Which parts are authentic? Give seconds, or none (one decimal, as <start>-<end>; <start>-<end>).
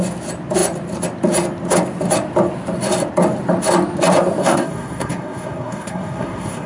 0.0-4.4